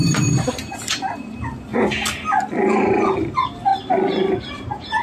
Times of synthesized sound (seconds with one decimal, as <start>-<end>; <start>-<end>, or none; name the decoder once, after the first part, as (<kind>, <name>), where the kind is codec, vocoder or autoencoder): 0.0-1.7 (vocoder, BigVGAN v2); 2.8-3.7; 4.5-5.0

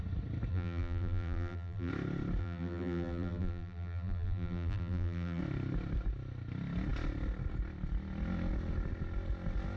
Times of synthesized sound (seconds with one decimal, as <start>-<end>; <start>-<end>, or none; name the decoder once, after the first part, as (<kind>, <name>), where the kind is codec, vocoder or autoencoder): 0.5-1.9 (vocoder, BigVGAN v2); 2.4-5.4

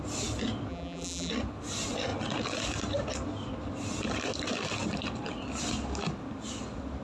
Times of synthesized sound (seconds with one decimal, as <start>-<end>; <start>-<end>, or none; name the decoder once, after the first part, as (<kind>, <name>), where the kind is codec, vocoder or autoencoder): 0.7-1.3 (vocoder, BigVGAN v2)